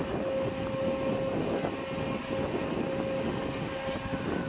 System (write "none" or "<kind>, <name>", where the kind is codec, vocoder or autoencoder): none